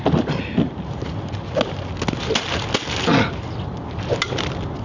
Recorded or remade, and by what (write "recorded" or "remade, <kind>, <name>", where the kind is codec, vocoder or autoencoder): recorded